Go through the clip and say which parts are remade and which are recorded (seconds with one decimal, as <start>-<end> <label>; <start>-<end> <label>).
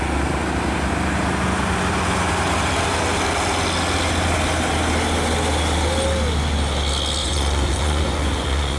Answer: 0.0-7.2 recorded; 7.2-8.8 remade